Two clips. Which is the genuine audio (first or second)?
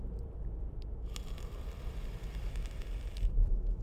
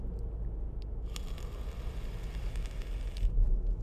second